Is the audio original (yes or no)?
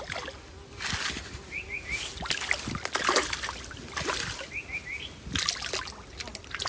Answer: yes